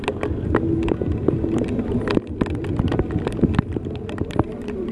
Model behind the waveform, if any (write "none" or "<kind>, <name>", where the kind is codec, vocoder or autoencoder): none